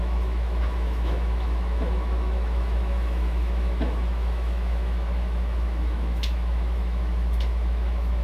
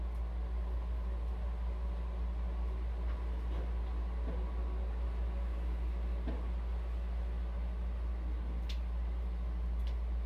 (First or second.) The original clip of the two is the second